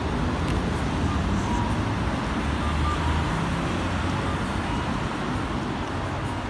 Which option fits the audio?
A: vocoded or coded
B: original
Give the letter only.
B